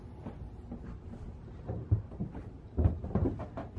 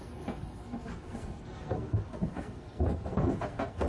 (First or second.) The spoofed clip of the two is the second